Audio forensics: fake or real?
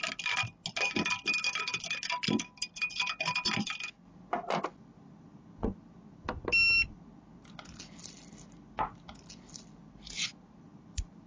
real